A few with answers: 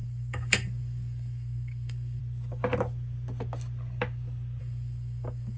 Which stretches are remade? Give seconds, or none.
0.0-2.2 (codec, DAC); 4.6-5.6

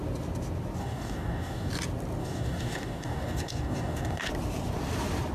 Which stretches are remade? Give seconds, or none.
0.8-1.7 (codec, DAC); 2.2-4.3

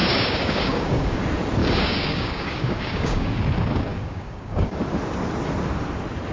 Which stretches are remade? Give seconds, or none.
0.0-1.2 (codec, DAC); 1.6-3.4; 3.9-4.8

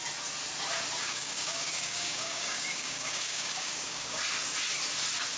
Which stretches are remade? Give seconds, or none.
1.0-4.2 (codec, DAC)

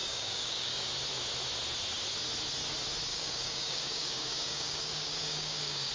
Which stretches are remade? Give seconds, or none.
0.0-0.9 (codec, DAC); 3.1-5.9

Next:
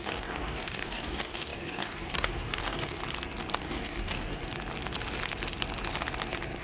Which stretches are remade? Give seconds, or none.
0.0-3.0 (codec, DAC); 3.6-4.4

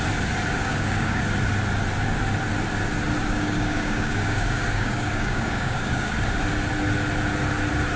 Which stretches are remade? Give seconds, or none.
0.6-1.2 (codec, DAC); 3.2-6.1

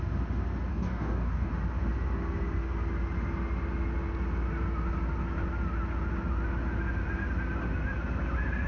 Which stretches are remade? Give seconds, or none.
0.7-1.5 (codec, DAC)